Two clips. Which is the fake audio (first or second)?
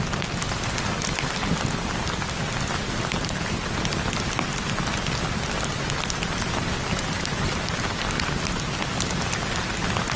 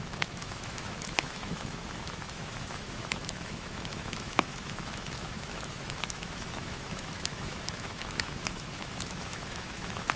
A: second